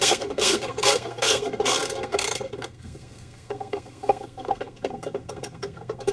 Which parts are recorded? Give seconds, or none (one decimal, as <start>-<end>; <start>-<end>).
none